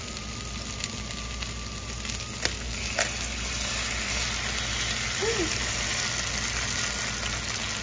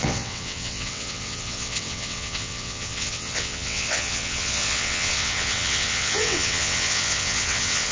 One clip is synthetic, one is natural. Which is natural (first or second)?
first